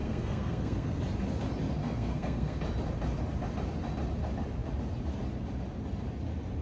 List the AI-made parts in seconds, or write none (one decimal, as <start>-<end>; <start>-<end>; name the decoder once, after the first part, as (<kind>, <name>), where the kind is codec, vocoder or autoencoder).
0.0-1.0 (codec, SNAC); 1.8-2.6